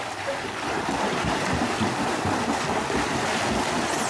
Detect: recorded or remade recorded